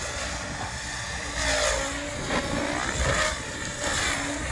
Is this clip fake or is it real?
real